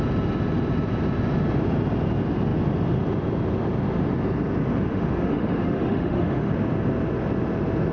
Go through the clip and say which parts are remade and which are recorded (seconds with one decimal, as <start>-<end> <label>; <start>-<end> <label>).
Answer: 0.0-4.9 recorded; 4.9-6.5 remade; 6.5-7.9 recorded